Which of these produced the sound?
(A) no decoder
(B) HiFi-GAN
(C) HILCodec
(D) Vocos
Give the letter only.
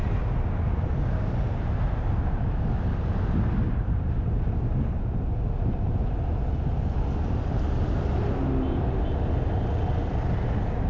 A